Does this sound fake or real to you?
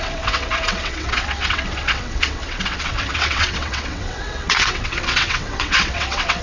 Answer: fake